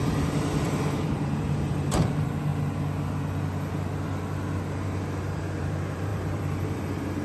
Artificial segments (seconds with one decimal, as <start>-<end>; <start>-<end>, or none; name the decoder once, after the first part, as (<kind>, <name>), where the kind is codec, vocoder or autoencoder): 0.0-2.5 (vocoder, BigVGAN v2); 5.6-7.2

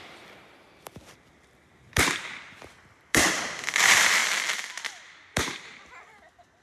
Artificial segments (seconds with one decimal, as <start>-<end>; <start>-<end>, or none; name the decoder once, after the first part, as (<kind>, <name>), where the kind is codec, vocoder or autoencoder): 0.0-6.6 (vocoder, BigVGAN v2)

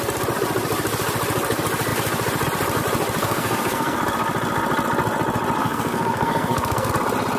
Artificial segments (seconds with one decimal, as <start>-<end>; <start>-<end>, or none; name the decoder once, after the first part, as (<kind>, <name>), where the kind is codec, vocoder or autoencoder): 3.2-4.0 (codec, SNAC); 5.6-6.9

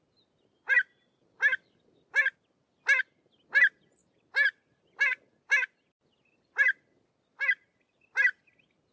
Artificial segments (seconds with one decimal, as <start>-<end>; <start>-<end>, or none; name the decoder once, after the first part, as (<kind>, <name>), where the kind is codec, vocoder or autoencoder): none